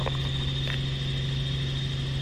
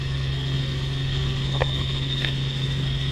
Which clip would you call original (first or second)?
first